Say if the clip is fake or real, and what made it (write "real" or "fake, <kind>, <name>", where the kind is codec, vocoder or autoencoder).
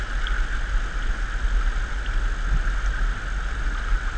real